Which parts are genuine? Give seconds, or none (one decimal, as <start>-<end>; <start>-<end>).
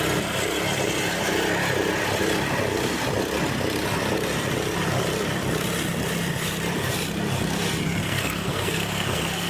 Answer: 0.0-8.0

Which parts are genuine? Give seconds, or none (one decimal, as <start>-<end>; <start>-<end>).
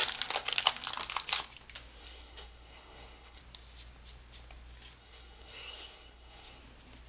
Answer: 0.0-2.0; 3.4-5.0; 6.6-7.1